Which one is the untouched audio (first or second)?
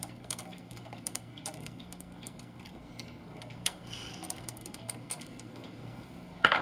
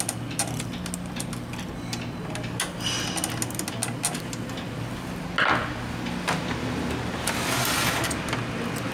second